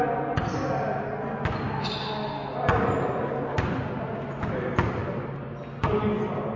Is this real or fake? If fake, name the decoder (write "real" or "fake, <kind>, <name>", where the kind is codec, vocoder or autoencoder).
real